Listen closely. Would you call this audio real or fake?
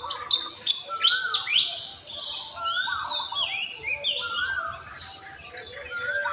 real